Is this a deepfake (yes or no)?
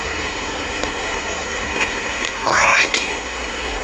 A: yes